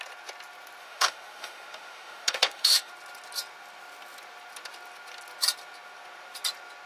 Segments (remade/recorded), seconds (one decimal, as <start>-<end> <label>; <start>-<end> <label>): 0.0-0.8 recorded; 0.8-2.9 remade; 2.9-6.9 recorded